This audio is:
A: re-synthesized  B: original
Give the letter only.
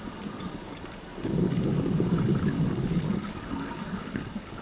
A